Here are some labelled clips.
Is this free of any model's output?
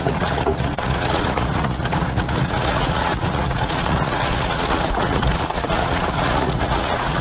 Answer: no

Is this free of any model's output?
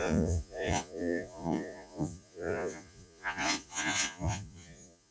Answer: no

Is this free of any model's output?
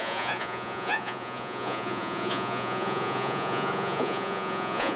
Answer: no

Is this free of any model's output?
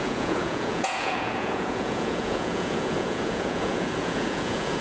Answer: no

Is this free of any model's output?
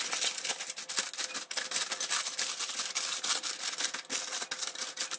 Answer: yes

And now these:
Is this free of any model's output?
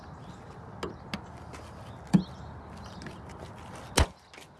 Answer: yes